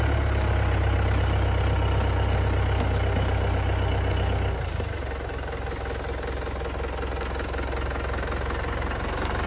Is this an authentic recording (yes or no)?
yes